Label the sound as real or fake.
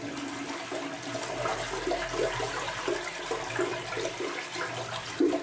real